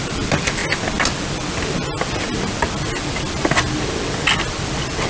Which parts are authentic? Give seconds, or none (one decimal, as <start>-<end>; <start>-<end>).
0.0-5.1